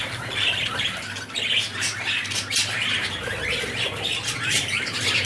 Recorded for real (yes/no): yes